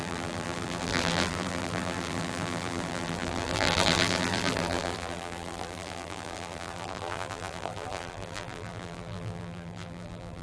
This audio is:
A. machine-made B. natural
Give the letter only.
A